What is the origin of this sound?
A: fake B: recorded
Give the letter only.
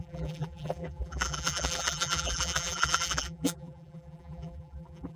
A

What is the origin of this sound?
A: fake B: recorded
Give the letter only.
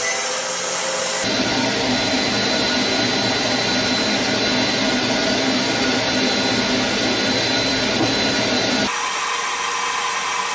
B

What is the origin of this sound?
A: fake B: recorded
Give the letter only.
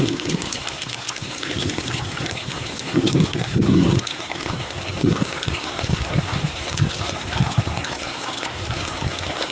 A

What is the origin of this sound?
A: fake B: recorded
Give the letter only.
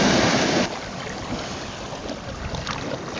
B